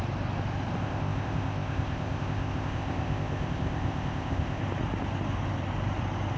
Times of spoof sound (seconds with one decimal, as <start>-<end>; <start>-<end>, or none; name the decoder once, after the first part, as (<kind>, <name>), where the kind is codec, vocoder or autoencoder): 0.8-4.6 (codec, ZipCodec)

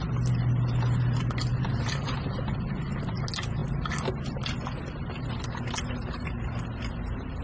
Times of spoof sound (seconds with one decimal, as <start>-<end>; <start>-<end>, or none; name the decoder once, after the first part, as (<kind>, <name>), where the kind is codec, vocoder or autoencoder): none

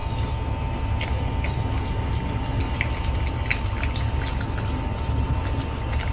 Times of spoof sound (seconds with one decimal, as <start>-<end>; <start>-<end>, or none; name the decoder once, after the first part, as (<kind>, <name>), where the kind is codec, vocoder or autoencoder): none